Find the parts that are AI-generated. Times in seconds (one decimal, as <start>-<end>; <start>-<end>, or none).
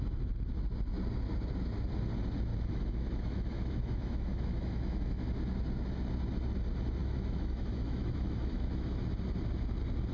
2.5-5.3; 7.0-9.0